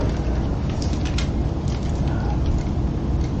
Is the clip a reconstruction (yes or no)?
no